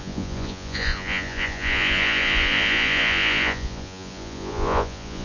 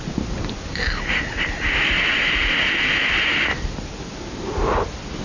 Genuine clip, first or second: second